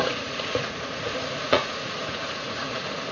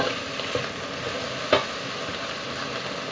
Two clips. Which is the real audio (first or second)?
second